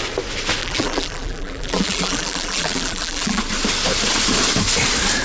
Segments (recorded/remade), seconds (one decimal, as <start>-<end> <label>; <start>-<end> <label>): 0.0-0.6 recorded; 0.6-3.4 remade; 3.4-5.2 recorded